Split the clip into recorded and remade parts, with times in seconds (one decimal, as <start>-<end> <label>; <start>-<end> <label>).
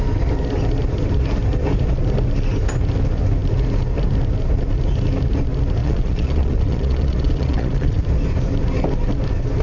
0.0-5.8 recorded; 5.8-8.0 remade; 8.0-9.6 recorded